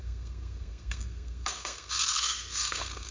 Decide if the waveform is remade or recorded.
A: remade